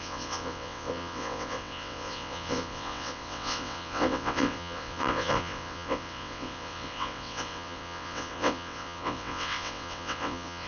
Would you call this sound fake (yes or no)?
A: yes